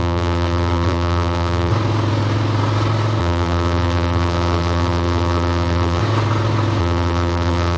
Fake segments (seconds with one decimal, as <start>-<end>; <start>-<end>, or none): 0.0-1.7; 3.2-6.0; 6.8-7.8